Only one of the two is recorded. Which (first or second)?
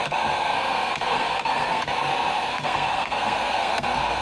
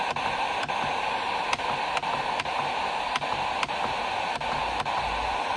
second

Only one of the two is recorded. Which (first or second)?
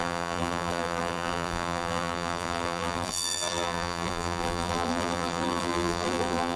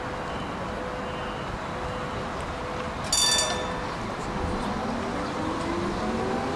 second